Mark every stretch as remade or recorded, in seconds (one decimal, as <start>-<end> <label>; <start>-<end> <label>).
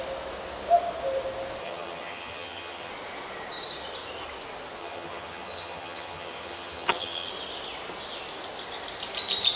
0.0-1.6 recorded; 1.6-2.9 remade; 2.9-4.8 recorded; 4.8-7.3 remade; 7.3-9.6 recorded